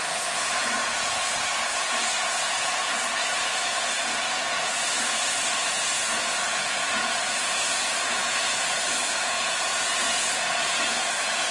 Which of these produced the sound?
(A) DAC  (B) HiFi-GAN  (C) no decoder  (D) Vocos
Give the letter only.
D